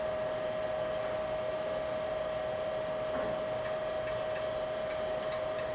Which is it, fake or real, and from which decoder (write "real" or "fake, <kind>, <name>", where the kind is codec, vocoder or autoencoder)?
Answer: real